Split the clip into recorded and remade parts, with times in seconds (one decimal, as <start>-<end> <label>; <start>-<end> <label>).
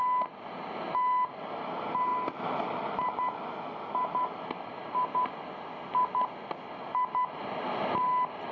0.0-8.5 recorded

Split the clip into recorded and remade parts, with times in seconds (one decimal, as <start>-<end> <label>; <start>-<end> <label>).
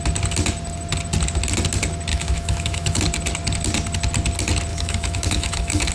0.0-2.1 recorded; 2.1-3.0 remade; 3.0-4.7 recorded; 4.7-5.9 remade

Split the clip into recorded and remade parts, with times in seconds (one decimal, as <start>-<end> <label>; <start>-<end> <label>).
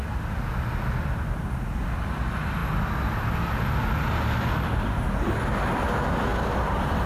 0.0-6.3 recorded; 6.3-7.1 remade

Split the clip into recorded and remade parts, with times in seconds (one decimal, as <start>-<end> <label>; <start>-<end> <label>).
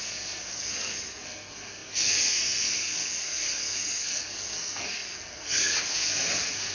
0.0-6.7 remade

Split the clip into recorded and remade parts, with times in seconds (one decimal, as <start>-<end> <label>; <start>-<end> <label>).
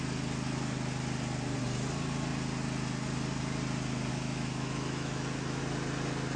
0.0-4.1 recorded; 4.1-5.6 remade; 5.6-6.4 recorded